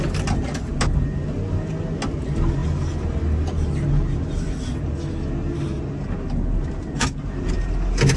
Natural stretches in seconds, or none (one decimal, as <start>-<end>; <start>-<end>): 0.0-8.2